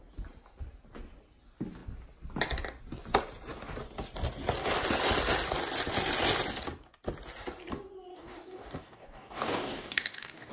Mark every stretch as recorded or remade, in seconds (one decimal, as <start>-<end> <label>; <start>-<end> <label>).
0.0-8.1 recorded; 8.1-10.5 remade